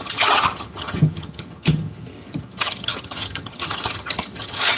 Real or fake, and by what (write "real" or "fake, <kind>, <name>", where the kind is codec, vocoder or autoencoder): fake, vocoder, HiFi-GAN